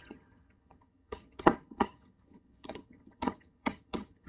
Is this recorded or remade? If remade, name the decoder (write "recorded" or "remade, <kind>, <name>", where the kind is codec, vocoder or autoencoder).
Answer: remade, vocoder, HiFi-GAN